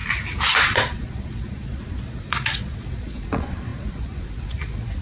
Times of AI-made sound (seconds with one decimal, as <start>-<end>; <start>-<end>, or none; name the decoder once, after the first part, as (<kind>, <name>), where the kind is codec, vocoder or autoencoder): 0.6-5.0 (vocoder, Vocos)